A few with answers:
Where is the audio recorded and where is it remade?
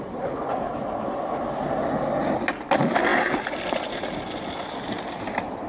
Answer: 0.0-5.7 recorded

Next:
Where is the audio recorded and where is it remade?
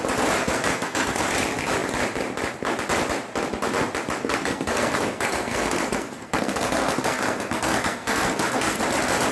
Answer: 0.0-0.4 recorded; 0.4-1.3 remade; 1.3-4.2 recorded; 4.2-8.8 remade; 8.8-9.3 recorded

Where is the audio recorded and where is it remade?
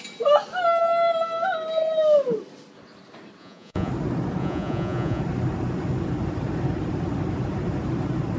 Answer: 0.0-3.4 recorded; 3.4-3.9 remade; 3.9-4.4 recorded; 4.4-5.2 remade; 5.2-8.4 recorded